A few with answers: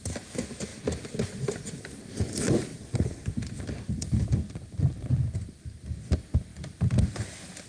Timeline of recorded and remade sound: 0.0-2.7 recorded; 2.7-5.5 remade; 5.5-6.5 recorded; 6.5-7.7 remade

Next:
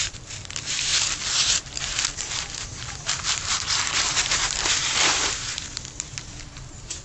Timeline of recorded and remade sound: 0.0-0.9 remade; 0.9-1.6 recorded; 1.6-7.0 remade

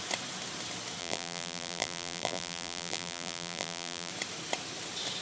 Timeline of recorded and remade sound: 0.0-1.0 recorded; 1.0-4.1 remade; 4.1-5.2 recorded

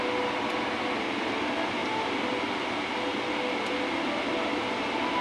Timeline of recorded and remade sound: 0.0-1.8 recorded; 1.8-2.5 remade; 2.5-5.2 recorded

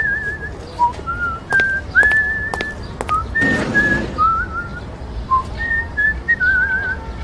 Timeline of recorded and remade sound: 0.0-4.7 recorded; 4.7-5.7 remade; 5.7-7.2 recorded

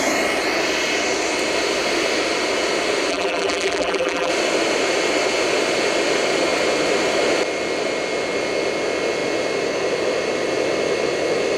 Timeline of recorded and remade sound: 0.0-3.1 recorded; 3.1-4.3 remade; 4.3-11.6 recorded

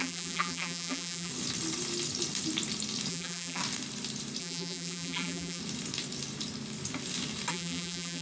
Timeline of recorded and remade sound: 0.0-1.3 remade; 1.3-3.1 recorded; 3.1-3.6 remade; 3.6-4.4 recorded; 4.4-5.6 remade; 5.6-7.5 recorded; 7.5-8.2 remade

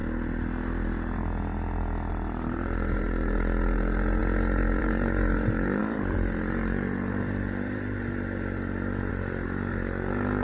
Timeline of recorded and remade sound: 0.0-2.1 recorded; 2.1-10.4 remade